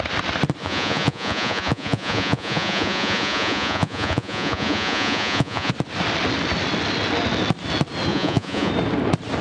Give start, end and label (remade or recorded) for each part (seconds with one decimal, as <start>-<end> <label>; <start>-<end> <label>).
0.0-0.6 recorded; 0.6-5.7 remade; 5.7-8.1 recorded; 8.1-8.7 remade; 8.7-9.4 recorded